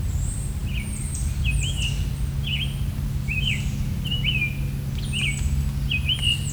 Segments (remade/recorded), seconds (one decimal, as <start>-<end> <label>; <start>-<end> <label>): 0.0-6.5 recorded